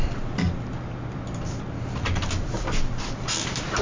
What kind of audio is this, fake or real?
real